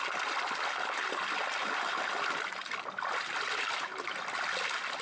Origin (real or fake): real